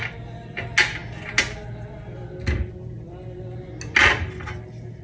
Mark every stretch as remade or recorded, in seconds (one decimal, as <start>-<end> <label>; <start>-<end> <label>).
0.0-5.0 recorded